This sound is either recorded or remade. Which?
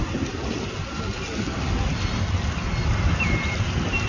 recorded